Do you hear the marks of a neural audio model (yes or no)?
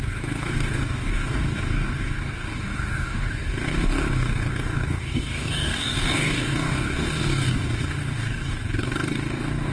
yes